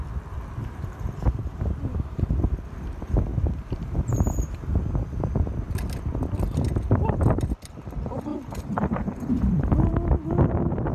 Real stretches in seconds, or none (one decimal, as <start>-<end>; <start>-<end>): 0.0-0.6; 2.3-3.3; 4.8-8.3; 9.9-10.9

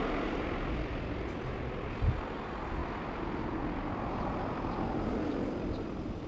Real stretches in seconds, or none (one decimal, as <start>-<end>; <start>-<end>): 0.0-2.8

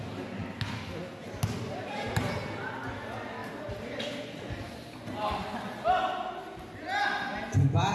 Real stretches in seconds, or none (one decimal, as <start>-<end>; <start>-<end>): 0.0-3.4; 4.1-7.9

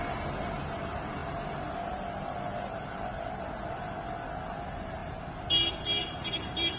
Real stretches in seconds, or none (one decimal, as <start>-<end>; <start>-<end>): 0.0-6.8

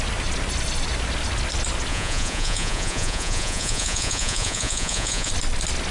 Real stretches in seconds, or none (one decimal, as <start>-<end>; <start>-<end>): 0.0-1.9; 5.3-5.9

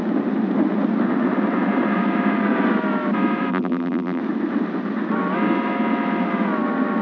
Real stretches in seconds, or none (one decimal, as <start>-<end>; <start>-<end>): 0.0-3.5; 4.2-7.0

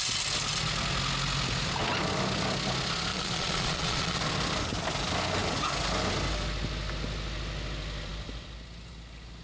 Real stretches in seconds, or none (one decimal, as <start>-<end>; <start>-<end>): 0.0-3.1; 4.2-9.4